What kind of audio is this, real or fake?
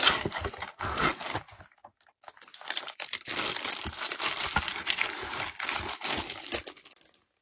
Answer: real